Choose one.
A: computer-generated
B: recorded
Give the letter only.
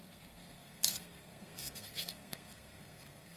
A